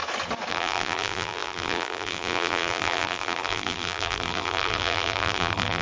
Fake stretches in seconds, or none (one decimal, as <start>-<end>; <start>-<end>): 0.5-5.8